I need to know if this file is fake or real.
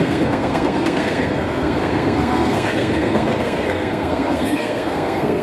fake